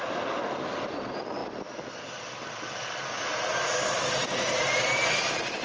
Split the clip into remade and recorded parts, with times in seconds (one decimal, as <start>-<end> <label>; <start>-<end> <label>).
0.0-5.6 recorded